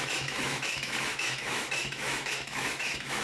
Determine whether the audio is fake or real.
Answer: fake